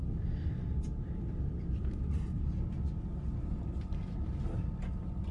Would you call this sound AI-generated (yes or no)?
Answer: no